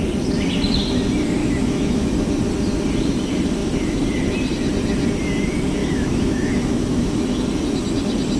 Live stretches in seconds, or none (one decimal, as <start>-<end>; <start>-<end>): 0.0-1.4; 2.1-5.8; 7.2-8.4